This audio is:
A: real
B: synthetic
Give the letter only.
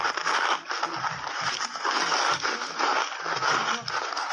A